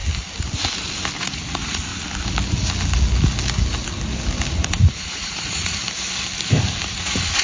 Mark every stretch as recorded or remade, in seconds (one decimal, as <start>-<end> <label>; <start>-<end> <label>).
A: 0.0-1.2 recorded; 1.2-1.9 remade; 1.9-4.5 recorded; 4.5-5.8 remade; 5.8-6.9 recorded; 6.9-7.4 remade